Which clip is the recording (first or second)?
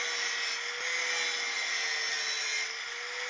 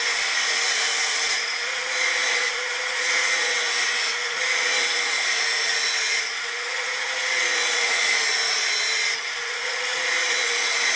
first